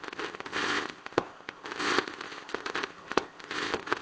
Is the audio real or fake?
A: fake